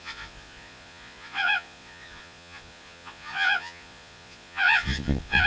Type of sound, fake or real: fake